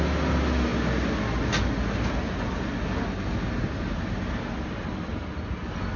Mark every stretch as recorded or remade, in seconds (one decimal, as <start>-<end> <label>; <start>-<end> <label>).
0.0-6.0 recorded